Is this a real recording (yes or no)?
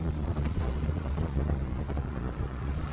no